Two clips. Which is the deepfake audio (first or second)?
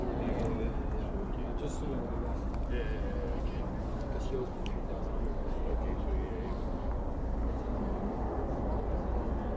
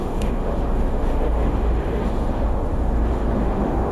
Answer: second